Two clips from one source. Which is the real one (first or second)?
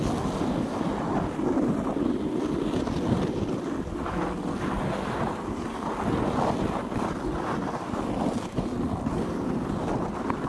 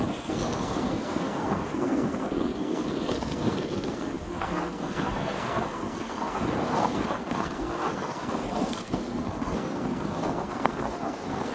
first